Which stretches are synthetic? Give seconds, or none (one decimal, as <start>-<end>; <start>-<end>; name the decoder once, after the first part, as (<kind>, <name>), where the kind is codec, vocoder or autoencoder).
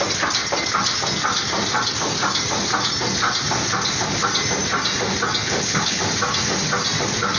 5.4-6.0 (codec, HILCodec)